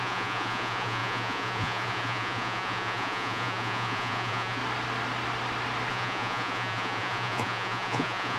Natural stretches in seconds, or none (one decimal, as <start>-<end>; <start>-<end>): 4.6-5.9